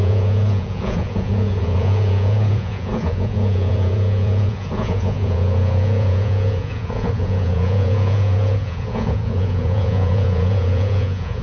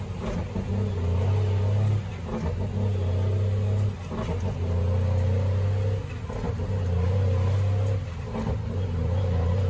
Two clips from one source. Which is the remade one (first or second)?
first